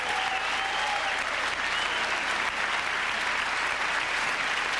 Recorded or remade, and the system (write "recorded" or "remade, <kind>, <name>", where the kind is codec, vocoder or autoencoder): recorded